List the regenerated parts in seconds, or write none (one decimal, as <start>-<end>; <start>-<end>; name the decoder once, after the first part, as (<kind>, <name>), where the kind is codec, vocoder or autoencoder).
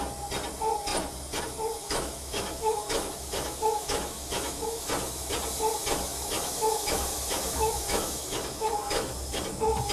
1.8-4.9 (autoencoder, DAC-VAE); 6.1-9.4